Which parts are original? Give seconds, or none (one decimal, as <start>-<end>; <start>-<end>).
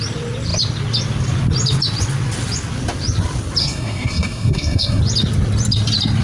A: 0.0-3.6; 5.0-6.2